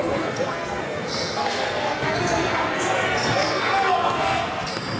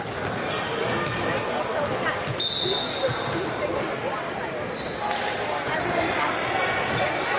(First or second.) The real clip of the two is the second